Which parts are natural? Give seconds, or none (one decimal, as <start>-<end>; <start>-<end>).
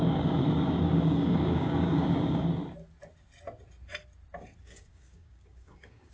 2.5-4.6